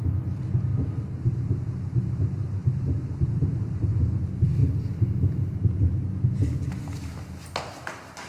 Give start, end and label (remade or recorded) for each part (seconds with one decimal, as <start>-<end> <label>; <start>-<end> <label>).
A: 0.0-8.3 recorded